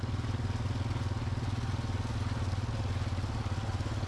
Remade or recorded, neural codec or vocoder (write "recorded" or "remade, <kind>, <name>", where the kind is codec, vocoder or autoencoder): recorded